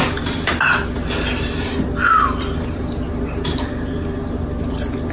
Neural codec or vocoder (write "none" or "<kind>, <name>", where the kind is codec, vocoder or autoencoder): none